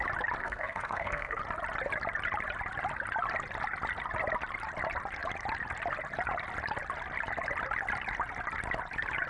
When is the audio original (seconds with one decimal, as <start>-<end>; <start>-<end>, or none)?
0.0-0.4; 1.4-9.3